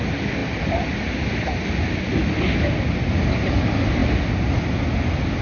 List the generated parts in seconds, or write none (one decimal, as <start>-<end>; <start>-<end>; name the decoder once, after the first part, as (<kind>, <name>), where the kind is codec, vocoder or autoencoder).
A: none